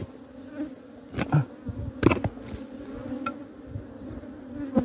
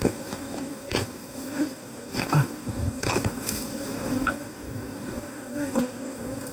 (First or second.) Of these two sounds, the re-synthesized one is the second